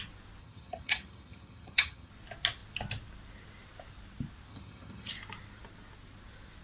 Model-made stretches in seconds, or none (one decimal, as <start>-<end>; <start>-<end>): 0.4-2.1; 4.5-5.1